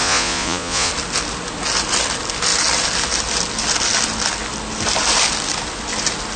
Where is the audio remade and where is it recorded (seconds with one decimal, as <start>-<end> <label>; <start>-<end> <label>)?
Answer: 0.0-0.9 remade; 0.9-6.4 recorded